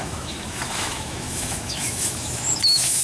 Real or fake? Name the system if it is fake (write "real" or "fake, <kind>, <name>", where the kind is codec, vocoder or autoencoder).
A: fake, autoencoder, DAC-VAE